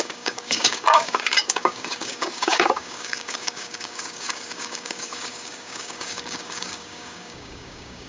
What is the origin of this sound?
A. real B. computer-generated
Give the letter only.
B